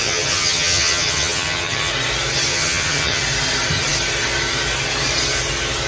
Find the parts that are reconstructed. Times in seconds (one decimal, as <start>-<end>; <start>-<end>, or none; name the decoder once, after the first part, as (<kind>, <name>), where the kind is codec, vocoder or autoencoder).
0.0-1.9 (vocoder, HiFi-GAN); 2.5-3.2